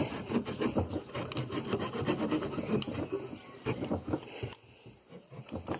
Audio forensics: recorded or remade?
recorded